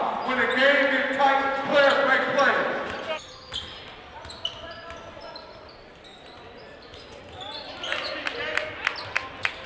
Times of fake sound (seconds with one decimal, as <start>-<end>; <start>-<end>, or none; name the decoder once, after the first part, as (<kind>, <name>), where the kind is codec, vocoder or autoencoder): none